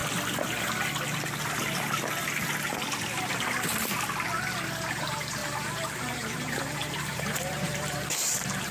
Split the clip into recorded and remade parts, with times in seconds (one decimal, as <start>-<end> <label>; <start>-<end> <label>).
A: 0.0-4.9 recorded; 4.9-8.7 remade